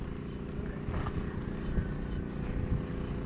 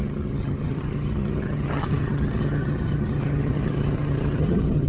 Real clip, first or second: first